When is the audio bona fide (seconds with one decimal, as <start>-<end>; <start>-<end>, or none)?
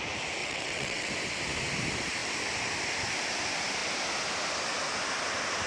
0.0-0.4; 1.1-5.7